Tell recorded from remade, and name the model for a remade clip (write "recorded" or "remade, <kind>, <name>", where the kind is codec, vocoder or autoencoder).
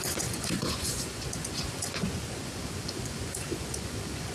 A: remade, vocoder, Vocos